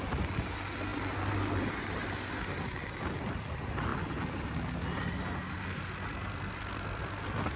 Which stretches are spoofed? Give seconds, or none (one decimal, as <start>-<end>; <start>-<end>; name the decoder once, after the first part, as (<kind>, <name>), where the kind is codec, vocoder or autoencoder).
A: none